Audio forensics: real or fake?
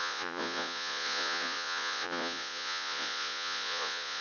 fake